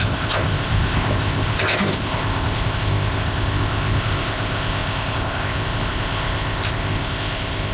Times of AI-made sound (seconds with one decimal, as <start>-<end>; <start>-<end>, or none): 0.0-7.7